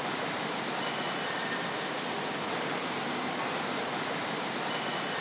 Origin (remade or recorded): recorded